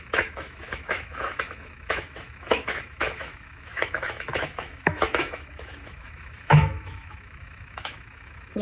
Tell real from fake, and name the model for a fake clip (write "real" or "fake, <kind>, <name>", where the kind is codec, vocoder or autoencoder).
fake, autoencoder, DAC-VAE